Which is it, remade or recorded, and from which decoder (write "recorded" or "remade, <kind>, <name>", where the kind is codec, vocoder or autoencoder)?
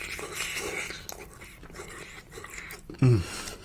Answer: recorded